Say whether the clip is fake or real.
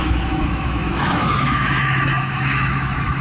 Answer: fake